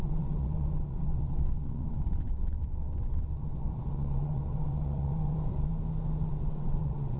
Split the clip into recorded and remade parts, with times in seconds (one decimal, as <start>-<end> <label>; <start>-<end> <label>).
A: 0.0-5.7 remade; 5.7-6.3 recorded; 6.3-7.2 remade